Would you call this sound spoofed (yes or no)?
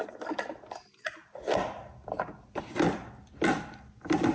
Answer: no